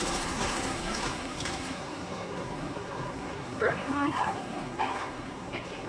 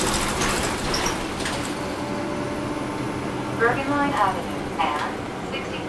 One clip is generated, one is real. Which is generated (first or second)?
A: first